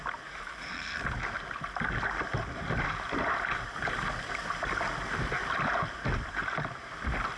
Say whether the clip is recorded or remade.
recorded